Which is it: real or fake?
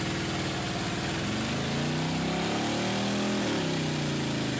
real